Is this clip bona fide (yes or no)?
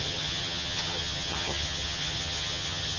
no